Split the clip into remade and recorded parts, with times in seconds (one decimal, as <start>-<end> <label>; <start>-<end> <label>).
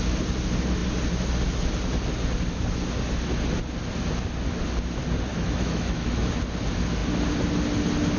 0.0-5.3 recorded; 5.3-6.3 remade; 6.3-8.2 recorded